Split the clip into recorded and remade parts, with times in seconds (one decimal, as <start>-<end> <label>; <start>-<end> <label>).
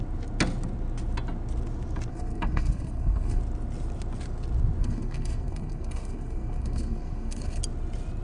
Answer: 0.0-2.1 recorded; 2.1-3.4 remade; 3.4-4.8 recorded; 4.8-7.6 remade; 7.6-8.2 recorded